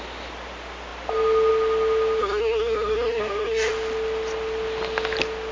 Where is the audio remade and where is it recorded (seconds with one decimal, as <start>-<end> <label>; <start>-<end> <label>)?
0.0-2.2 recorded; 2.2-3.7 remade; 3.7-5.5 recorded